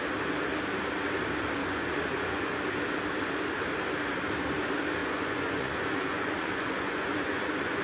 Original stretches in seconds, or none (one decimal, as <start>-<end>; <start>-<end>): 0.0-1.6; 2.6-5.0